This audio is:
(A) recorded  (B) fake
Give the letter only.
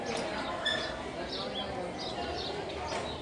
A